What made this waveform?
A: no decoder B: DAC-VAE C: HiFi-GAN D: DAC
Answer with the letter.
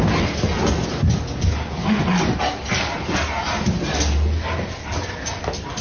A